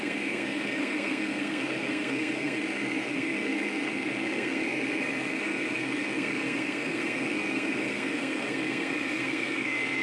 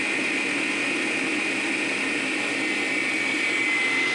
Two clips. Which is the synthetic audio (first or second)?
first